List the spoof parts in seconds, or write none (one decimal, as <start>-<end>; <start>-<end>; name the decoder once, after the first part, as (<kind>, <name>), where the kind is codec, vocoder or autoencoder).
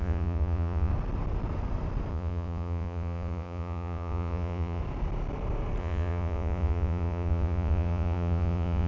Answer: 0.0-0.9 (vocoder, Vocos); 2.1-4.8; 5.8-8.9